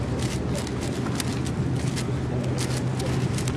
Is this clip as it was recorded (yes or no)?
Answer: yes